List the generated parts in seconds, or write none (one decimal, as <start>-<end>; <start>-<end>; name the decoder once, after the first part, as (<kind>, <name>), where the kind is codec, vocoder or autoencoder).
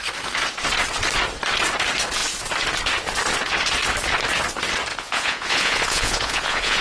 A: 4.9-6.8 (vocoder, Vocos)